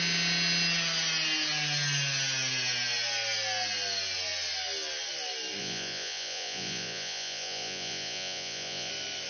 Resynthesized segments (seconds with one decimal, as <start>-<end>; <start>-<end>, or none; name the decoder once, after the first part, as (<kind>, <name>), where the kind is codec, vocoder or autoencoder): 5.6-8.9 (vocoder, Vocos)